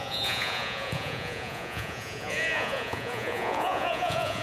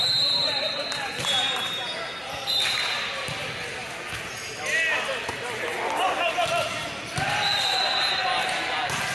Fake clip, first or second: first